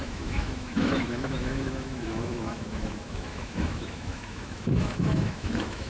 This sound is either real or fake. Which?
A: fake